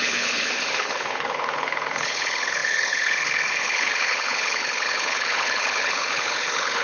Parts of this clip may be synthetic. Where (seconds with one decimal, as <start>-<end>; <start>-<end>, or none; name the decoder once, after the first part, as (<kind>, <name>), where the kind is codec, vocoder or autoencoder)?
0.0-6.8 (codec, HILCodec)